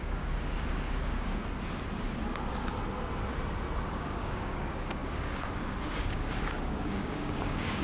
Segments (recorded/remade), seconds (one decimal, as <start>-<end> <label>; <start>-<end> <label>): 0.0-1.4 remade; 1.4-3.9 recorded; 3.9-7.8 remade